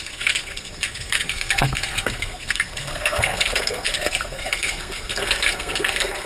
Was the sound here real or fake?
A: fake